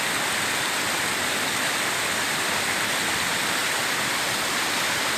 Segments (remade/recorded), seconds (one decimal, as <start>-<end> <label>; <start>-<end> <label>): 0.0-5.2 recorded